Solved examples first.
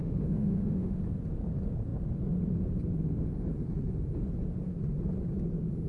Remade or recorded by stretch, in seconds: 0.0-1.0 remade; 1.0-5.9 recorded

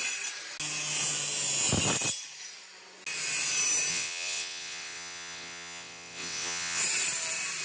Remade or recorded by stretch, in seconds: 0.0-3.9 recorded; 3.9-6.8 remade; 6.8-7.6 recorded

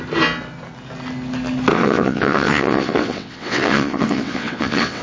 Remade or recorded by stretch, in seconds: 0.0-1.7 recorded; 1.7-5.0 remade

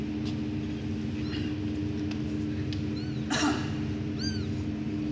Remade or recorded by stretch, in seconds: 0.0-5.1 recorded

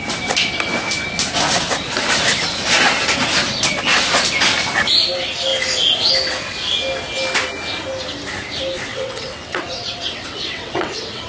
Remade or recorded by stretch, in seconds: 0.0-8.9 recorded; 8.9-11.3 remade

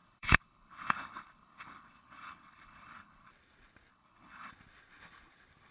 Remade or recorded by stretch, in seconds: 0.0-3.3 remade; 3.3-3.9 recorded; 3.9-4.5 remade; 4.5-5.7 recorded